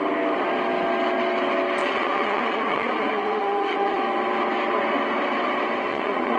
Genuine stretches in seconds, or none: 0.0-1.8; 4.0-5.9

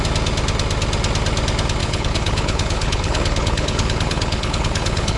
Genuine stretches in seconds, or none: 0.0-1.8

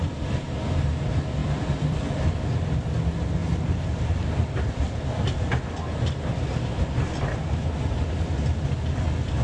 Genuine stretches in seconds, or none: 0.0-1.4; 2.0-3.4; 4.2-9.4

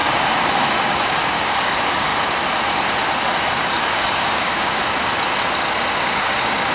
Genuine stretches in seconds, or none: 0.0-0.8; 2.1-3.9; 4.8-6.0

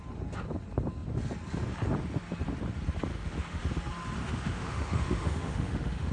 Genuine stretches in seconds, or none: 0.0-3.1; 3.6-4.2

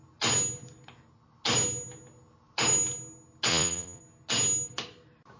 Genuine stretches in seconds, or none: 0.0-3.5; 4.0-5.4